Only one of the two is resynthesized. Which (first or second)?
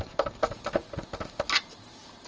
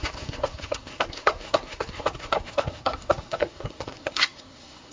second